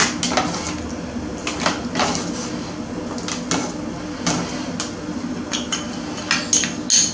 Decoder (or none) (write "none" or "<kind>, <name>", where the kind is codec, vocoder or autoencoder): none